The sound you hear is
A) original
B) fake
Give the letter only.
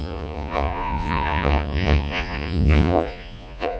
B